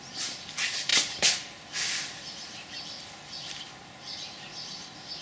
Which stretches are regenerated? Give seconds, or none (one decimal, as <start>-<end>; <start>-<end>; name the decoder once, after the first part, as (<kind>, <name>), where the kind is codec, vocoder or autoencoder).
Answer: none